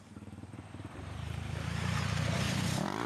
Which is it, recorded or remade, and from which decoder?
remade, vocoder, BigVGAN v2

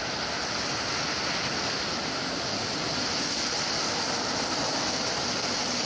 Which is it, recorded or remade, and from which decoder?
recorded